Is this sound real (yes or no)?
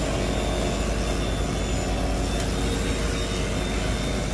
yes